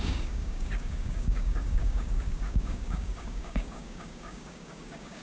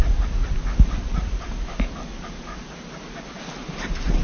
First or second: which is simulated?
first